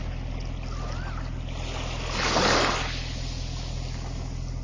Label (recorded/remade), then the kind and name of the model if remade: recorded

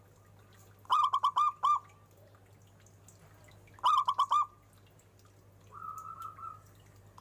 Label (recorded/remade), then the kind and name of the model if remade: recorded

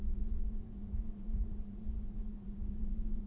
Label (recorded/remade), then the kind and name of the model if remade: remade, vocoder, Vocos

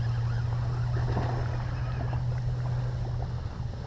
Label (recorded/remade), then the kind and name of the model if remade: recorded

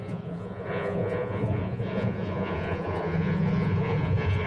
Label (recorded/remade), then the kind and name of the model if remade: remade, vocoder, Vocos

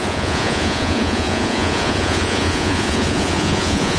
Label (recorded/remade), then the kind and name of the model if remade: remade, vocoder, Vocos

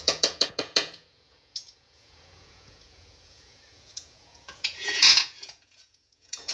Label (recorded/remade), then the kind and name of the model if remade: remade, vocoder, Vocos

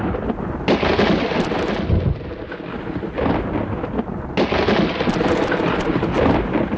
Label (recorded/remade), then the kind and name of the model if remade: recorded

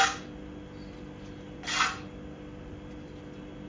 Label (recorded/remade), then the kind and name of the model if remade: recorded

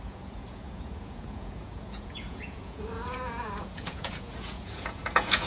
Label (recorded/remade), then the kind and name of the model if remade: remade, vocoder, Vocos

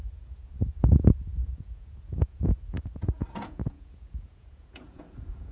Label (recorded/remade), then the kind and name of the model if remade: remade, vocoder, Vocos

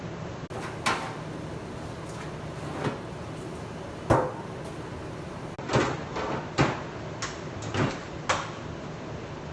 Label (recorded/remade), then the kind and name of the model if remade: recorded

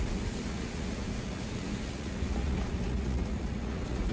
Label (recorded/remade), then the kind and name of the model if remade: remade, vocoder, Vocos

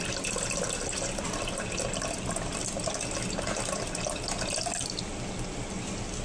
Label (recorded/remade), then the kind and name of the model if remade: recorded